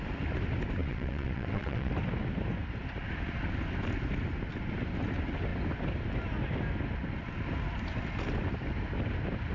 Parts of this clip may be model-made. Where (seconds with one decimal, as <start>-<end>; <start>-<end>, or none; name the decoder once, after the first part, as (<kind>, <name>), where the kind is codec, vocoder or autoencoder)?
0.8-1.9 (vocoder, WaveNeXt)